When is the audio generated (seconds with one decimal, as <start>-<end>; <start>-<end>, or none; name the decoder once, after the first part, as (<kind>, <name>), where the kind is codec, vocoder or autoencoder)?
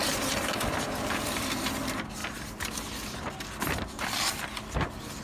none